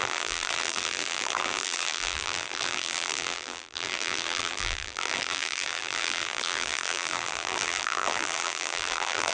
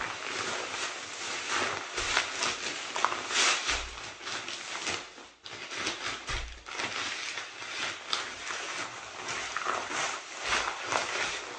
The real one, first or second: second